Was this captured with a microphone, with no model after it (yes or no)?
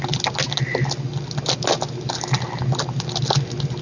yes